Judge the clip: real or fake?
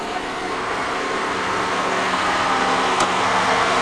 fake